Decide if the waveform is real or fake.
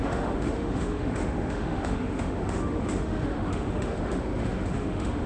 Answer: fake